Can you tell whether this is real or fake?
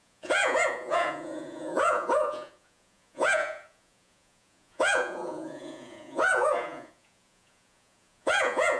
fake